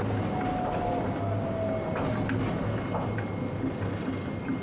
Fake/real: real